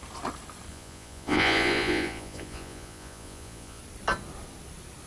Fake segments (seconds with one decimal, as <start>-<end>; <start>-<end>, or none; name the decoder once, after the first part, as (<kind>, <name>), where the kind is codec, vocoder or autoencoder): 0.7-3.8 (vocoder, Vocos)